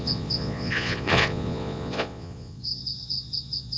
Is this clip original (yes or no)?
no